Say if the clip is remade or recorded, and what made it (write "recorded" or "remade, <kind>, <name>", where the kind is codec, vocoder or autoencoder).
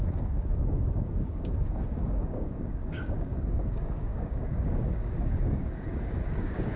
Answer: remade, codec, DAC